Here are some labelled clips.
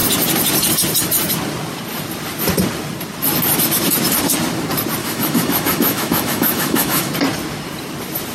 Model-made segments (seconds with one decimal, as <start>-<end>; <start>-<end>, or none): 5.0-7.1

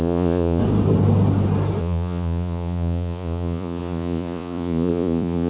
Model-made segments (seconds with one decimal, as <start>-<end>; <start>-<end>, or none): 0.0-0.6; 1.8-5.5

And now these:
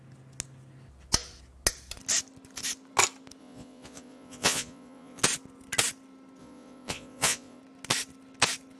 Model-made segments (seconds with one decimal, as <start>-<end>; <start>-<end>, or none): 3.4-5.2; 6.4-7.6

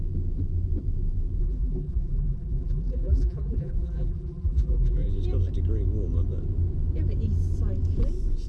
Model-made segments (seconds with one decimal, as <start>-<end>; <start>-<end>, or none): 1.4-5.1

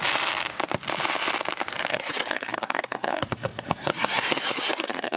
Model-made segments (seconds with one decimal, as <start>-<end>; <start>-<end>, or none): 1.9-5.2